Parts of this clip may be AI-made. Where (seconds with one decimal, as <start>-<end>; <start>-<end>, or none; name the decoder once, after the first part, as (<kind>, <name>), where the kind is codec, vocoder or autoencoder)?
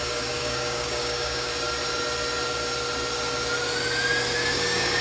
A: 0.0-1.5 (codec, DAC); 4.5-5.0